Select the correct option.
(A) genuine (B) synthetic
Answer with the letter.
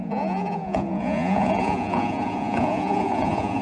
B